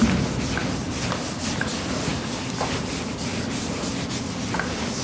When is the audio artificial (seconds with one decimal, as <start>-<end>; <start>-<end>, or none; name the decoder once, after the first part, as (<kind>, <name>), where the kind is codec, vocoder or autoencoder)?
none